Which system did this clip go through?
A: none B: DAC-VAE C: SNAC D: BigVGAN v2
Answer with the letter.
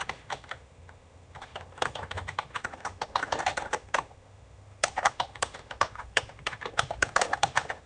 B